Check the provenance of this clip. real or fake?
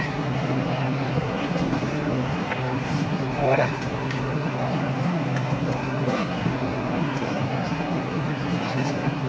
fake